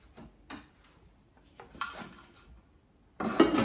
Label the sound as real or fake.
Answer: real